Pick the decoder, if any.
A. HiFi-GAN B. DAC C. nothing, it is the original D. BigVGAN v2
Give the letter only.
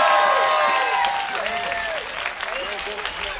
C